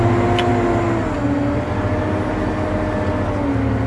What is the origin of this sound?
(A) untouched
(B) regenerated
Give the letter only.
A